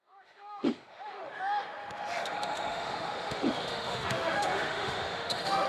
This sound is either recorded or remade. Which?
remade